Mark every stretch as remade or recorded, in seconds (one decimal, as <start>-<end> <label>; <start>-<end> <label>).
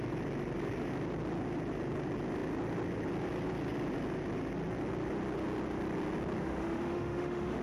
0.0-6.4 recorded; 6.4-7.6 remade